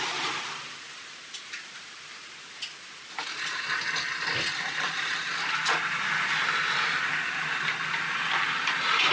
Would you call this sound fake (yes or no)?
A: no